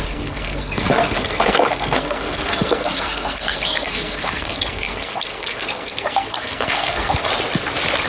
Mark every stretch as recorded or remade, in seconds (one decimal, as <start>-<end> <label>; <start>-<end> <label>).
0.0-7.3 remade; 7.3-8.1 recorded